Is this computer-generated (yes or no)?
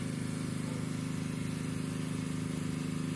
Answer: no